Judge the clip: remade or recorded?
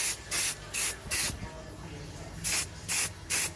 recorded